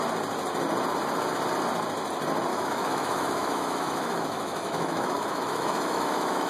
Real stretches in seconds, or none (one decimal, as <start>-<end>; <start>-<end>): 0.0-2.5